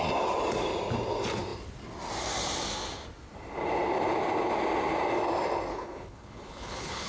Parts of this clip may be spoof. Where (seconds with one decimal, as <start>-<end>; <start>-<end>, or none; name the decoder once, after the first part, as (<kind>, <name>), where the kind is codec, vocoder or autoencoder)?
5.7-7.1 (codec, HILCodec)